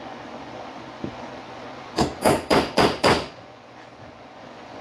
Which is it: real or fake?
fake